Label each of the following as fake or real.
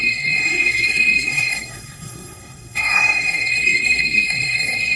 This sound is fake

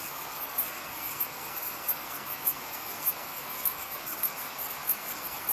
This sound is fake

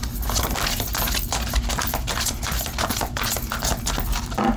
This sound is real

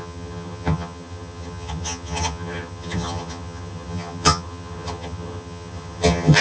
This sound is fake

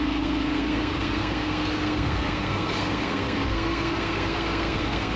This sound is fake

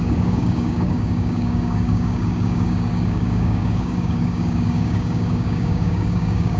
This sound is fake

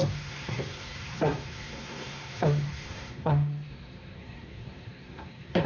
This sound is fake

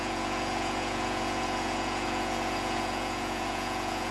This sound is fake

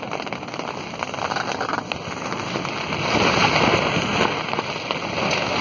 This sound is real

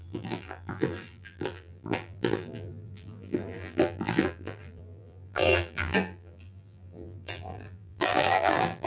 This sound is fake